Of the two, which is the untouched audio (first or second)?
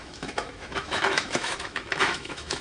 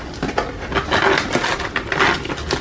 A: second